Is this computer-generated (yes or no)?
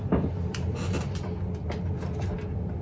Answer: no